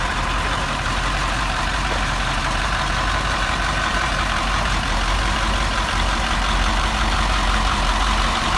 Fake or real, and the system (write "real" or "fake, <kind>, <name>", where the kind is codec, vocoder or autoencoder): fake, vocoder, BigVGAN v2